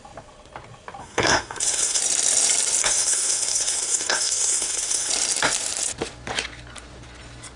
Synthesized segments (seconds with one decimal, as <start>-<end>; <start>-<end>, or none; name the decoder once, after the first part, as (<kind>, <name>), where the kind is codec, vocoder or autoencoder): 1.0-2.0 (codec, SNAC); 2.8-5.1

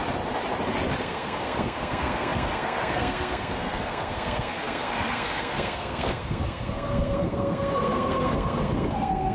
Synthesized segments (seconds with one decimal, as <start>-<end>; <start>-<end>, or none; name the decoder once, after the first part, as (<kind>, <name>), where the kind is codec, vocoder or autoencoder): 1.0-9.3 (codec, SNAC)

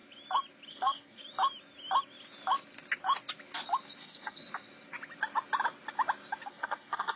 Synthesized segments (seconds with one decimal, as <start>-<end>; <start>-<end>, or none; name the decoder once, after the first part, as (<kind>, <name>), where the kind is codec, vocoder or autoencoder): 0.7-1.2 (codec, SNAC); 4.0-4.4; 6.5-7.2

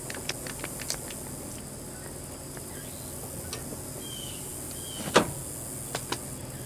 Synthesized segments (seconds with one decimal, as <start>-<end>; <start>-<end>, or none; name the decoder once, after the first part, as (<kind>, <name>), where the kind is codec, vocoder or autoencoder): none